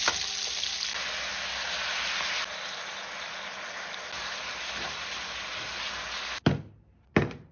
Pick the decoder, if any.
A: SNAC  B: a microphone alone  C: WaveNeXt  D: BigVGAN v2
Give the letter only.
B